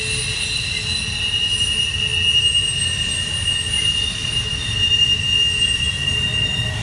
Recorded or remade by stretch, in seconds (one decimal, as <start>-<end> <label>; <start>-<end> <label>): 0.0-6.8 recorded